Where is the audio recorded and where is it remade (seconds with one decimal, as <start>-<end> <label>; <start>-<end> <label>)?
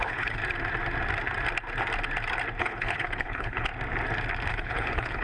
0.0-0.4 remade; 0.4-2.6 recorded; 2.6-3.7 remade; 3.7-4.5 recorded; 4.5-5.2 remade